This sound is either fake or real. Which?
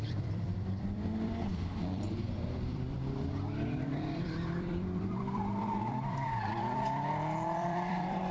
fake